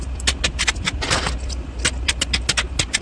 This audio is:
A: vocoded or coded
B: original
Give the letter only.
B